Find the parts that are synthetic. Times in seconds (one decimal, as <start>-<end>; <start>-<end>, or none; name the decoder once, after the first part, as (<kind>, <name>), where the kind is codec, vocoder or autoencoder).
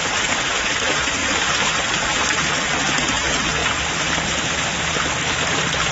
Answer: 0.0-0.7 (vocoder, BigVGAN v2); 1.2-2.2; 3.6-5.0